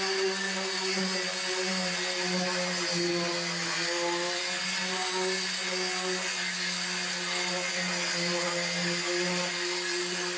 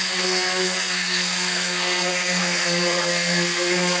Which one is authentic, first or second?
first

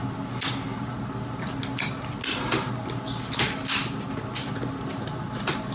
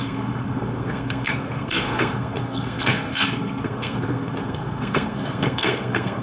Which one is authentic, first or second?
first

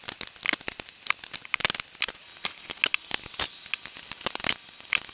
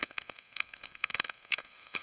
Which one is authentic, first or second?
first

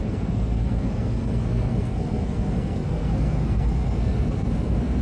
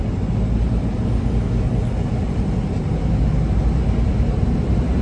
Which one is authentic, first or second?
second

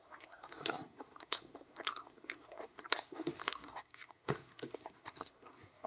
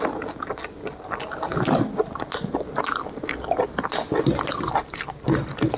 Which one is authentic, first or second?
second